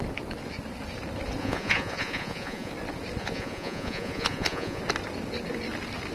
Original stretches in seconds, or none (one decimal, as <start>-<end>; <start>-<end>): 0.0-1.4; 2.7-3.2; 4.8-6.1